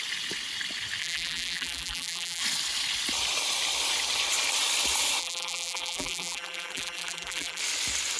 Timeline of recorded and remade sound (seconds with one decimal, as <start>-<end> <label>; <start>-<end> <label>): 0.0-1.0 recorded; 1.0-2.4 remade; 2.4-5.2 recorded; 5.2-7.6 remade; 7.6-8.2 recorded